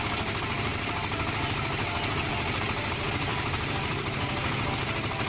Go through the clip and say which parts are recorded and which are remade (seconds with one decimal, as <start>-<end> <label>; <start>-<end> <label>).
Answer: 0.0-3.3 recorded; 3.3-4.7 remade; 4.7-5.3 recorded